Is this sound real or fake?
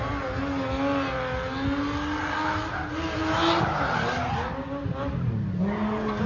real